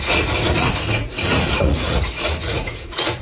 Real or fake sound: fake